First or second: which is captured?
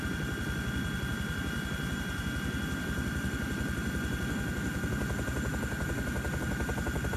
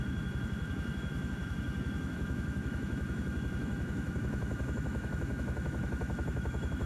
first